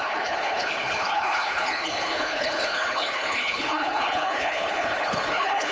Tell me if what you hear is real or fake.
fake